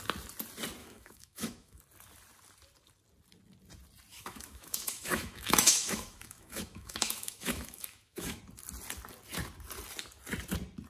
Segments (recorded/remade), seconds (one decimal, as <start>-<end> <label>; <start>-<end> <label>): 0.0-0.8 recorded; 0.8-1.8 remade; 1.8-4.1 recorded; 4.1-8.4 remade; 8.4-10.9 recorded